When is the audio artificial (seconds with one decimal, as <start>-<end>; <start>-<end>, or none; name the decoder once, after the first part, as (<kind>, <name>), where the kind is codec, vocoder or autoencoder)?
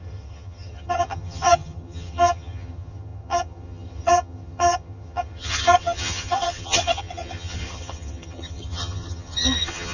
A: 0.0-9.9 (vocoder, HiFi-GAN)